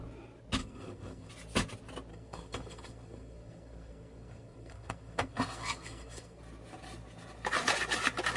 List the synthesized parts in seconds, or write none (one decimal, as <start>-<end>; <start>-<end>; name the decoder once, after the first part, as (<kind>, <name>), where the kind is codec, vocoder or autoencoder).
0.6-1.3 (codec, SNAC); 2.1-6.4